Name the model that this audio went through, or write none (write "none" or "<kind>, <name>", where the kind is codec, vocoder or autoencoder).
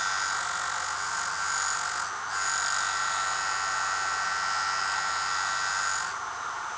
none